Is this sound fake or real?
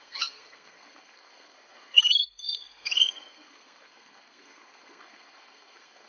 fake